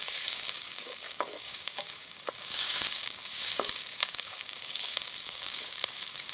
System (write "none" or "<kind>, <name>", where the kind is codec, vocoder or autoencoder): codec, DAC